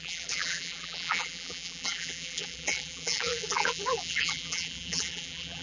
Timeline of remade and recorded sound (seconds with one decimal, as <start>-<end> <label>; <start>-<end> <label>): 0.0-5.6 remade